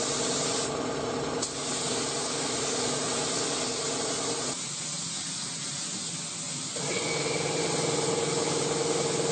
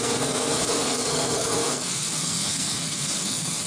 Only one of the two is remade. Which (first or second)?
second